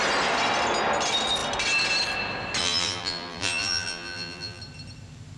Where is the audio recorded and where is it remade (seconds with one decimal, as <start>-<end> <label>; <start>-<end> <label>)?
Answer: 0.0-2.6 recorded; 2.6-4.6 remade; 4.6-5.4 recorded